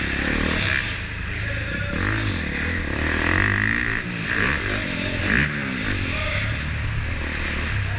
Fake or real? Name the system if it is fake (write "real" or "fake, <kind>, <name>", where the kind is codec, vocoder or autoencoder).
real